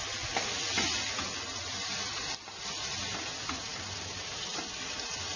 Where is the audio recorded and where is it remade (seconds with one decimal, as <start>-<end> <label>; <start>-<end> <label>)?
0.0-5.4 recorded

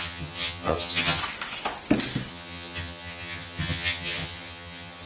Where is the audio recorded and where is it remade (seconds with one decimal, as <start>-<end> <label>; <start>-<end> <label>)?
0.0-1.2 remade; 1.2-2.3 recorded; 2.3-5.1 remade

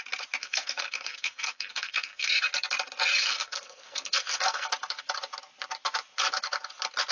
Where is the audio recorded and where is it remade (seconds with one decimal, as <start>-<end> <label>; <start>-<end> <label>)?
0.0-0.4 recorded; 0.4-2.3 remade; 2.3-3.2 recorded; 3.2-4.7 remade; 4.7-7.1 recorded

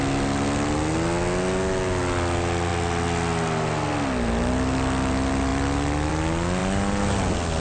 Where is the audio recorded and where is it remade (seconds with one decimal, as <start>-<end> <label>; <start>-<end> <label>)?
0.0-7.6 recorded

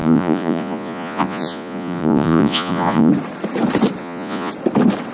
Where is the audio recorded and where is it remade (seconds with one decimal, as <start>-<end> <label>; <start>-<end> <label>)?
0.0-3.1 remade; 3.1-4.0 recorded; 4.0-4.5 remade; 4.5-5.1 recorded

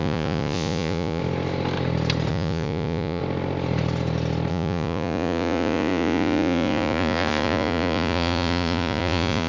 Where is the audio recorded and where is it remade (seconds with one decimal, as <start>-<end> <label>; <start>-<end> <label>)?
0.0-1.2 remade; 1.2-2.3 recorded; 2.3-3.2 remade; 3.2-4.5 recorded; 4.5-9.5 remade

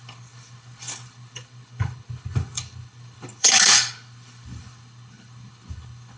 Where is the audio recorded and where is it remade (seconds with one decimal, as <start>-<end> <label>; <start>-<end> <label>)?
0.0-6.2 remade